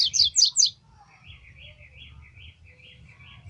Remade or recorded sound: recorded